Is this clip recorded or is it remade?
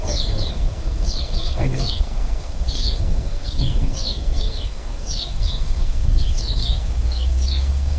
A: remade